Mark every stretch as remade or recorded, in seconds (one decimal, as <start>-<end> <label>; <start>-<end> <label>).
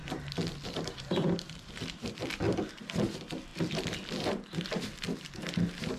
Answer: 0.0-2.7 remade; 2.7-3.5 recorded; 3.5-5.5 remade; 5.5-6.0 recorded